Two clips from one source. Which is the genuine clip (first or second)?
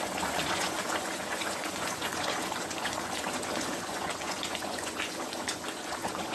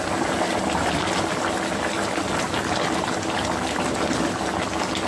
second